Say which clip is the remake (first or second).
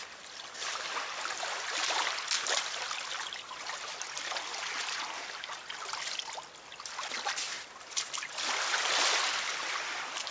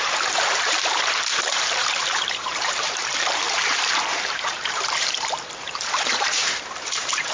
second